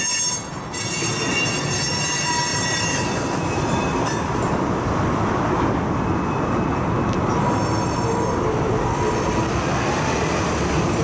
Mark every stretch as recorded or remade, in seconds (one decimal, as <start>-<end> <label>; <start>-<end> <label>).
0.0-11.0 recorded